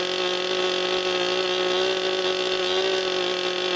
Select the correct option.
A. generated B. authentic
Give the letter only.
B